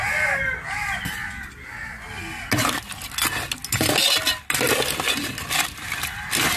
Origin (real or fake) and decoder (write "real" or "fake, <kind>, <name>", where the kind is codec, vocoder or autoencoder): real